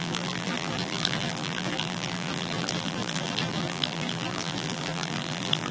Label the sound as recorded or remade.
remade